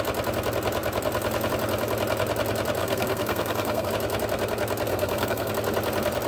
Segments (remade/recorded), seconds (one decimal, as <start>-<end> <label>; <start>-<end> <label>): 0.0-2.8 recorded; 2.8-3.9 remade; 3.9-4.9 recorded; 4.9-5.5 remade; 5.5-6.3 recorded